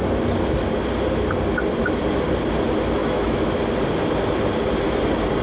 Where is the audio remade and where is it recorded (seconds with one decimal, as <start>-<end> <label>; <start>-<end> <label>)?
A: 0.0-3.0 recorded; 3.0-3.6 remade; 3.6-5.4 recorded